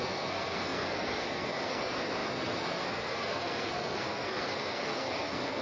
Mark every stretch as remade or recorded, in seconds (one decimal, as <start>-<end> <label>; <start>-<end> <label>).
0.0-5.6 remade